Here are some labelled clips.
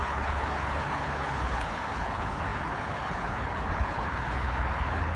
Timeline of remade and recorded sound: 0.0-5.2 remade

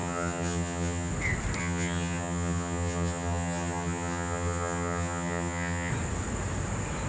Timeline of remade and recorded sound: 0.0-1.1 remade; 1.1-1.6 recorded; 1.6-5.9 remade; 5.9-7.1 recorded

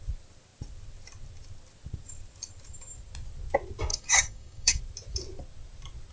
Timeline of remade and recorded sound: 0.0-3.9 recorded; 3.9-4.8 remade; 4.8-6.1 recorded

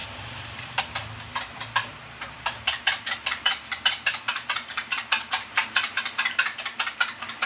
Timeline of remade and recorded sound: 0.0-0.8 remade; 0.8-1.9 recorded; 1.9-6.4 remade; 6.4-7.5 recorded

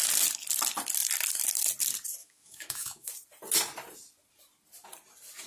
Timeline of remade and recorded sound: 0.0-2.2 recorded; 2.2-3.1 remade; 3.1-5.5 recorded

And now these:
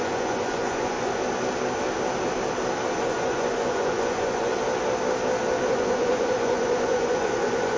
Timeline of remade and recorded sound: 0.0-1.2 remade; 1.2-3.0 recorded; 3.0-4.5 remade; 4.5-5.7 recorded; 5.7-7.8 remade